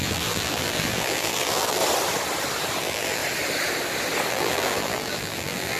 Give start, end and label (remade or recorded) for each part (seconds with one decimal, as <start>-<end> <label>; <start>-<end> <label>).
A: 0.0-1.8 remade; 1.8-2.8 recorded; 2.8-3.2 remade; 3.2-4.3 recorded; 4.3-5.8 remade

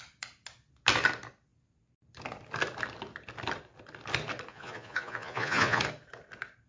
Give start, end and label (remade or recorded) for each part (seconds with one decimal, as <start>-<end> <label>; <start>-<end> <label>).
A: 0.0-4.5 recorded; 4.5-5.8 remade; 5.8-6.7 recorded

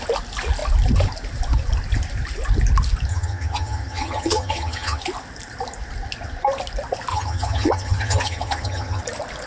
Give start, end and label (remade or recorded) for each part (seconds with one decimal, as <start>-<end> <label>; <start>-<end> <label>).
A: 0.0-3.1 recorded; 3.1-5.0 remade; 5.0-7.1 recorded; 7.1-9.0 remade; 9.0-9.5 recorded

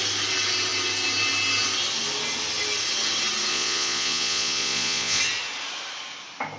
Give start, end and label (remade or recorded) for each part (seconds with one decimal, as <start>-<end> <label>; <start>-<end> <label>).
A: 0.0-3.5 recorded; 3.5-5.2 remade; 5.2-6.6 recorded

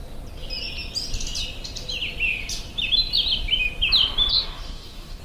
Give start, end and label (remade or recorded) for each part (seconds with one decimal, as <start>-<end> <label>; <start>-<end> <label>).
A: 0.0-4.3 recorded; 4.3-5.2 remade

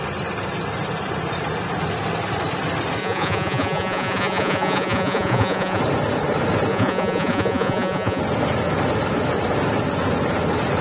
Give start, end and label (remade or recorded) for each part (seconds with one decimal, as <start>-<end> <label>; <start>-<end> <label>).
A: 0.0-3.0 recorded; 3.0-5.8 remade; 5.8-6.7 recorded; 6.7-8.2 remade; 8.2-10.8 recorded

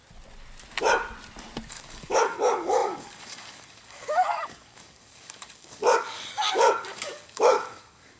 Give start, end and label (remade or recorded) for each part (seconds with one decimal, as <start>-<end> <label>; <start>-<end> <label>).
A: 0.0-1.7 recorded; 1.7-8.2 remade